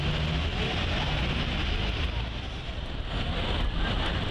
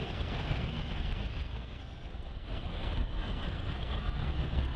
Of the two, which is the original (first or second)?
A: first